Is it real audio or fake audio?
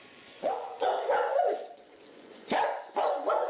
fake